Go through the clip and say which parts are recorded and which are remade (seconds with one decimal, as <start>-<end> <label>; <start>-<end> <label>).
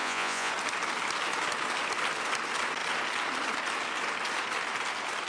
0.0-0.5 remade; 0.5-5.3 recorded